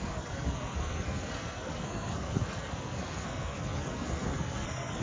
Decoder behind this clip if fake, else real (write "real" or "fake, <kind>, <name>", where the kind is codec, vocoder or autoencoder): fake, codec, SNAC